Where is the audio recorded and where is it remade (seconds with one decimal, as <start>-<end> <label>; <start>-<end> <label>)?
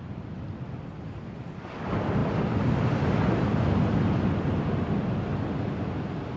0.0-6.4 recorded